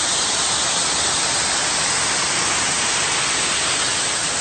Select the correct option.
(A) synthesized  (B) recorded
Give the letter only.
B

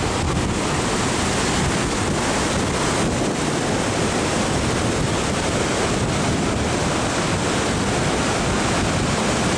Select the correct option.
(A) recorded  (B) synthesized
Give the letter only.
A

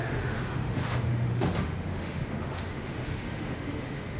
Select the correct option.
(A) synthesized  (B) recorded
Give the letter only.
A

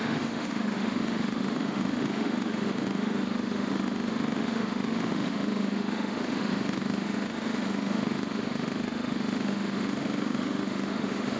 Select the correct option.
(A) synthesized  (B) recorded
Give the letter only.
A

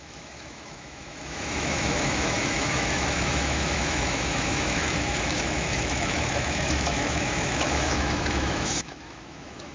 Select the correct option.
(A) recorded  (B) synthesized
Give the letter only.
B